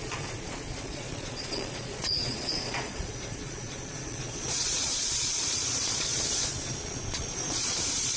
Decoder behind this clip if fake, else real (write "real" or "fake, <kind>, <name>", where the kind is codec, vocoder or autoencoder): fake, vocoder, Vocos